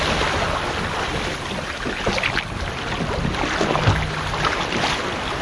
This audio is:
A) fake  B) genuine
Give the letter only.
B